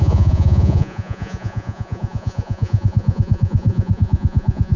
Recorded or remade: remade